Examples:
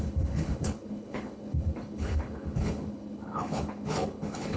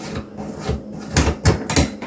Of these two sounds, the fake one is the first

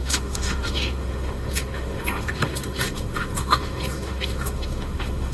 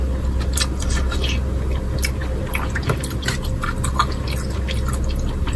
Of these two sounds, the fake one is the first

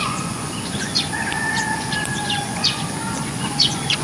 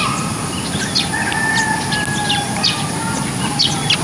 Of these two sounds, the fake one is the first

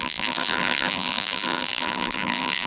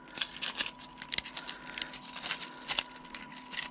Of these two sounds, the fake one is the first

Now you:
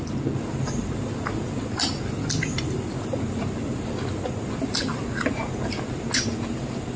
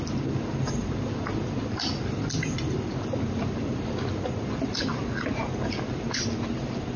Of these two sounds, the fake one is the second